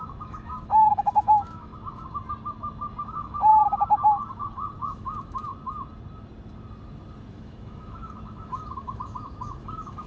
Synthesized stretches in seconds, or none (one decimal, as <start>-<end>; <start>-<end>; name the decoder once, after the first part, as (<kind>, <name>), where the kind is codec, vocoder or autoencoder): 0.0-1.7 (autoencoder, DAC-VAE); 3.0-3.5; 4.9-5.5; 7.3-10.1